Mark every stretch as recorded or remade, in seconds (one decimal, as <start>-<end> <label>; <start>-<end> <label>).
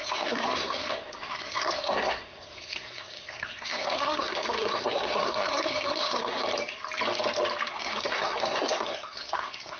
0.0-6.4 remade; 6.4-7.7 recorded; 7.7-9.8 remade